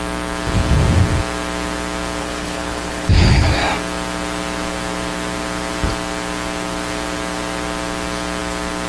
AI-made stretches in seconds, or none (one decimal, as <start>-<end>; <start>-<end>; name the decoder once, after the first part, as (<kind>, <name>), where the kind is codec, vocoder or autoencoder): 2.2-3.5 (codec, HILCodec)